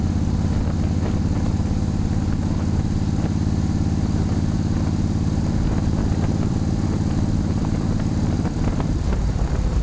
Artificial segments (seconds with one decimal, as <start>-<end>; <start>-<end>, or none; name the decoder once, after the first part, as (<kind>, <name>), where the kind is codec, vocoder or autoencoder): 6.0-9.8 (vocoder, BigVGAN v2)